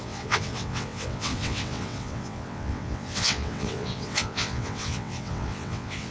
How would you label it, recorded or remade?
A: remade